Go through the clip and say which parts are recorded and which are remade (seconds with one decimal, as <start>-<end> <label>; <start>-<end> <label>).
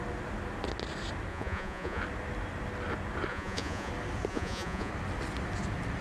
0.0-1.3 recorded; 1.3-2.0 remade; 2.0-3.3 recorded; 3.3-3.9 remade; 3.9-4.3 recorded; 4.3-4.9 remade; 4.9-6.0 recorded